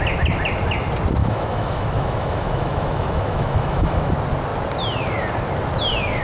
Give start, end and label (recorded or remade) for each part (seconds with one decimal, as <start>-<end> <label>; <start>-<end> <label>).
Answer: 0.0-1.2 recorded; 1.2-4.1 remade; 4.1-6.2 recorded